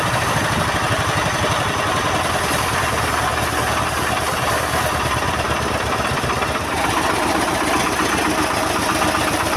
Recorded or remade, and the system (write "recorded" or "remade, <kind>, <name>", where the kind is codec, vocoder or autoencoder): remade, vocoder, BigVGAN v2